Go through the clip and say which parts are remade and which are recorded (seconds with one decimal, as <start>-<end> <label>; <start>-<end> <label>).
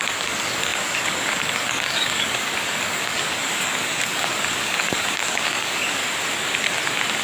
0.0-6.0 remade; 6.0-7.2 recorded